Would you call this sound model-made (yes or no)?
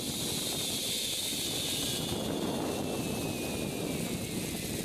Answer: no